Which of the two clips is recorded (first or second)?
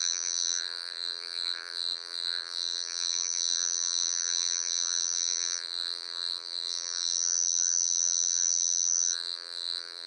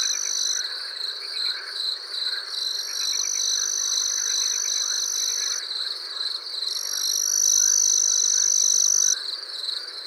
second